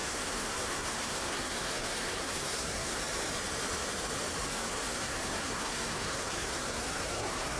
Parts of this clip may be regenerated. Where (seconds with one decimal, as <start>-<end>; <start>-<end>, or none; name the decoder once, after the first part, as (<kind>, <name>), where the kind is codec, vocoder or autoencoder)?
0.0-3.0 (codec, SNAC); 4.5-7.6